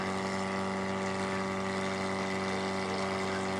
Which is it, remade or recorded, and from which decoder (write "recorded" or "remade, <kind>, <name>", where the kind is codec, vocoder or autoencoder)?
recorded